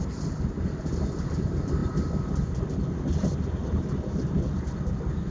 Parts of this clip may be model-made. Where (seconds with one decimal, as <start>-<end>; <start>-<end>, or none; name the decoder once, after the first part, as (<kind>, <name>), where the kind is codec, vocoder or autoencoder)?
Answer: none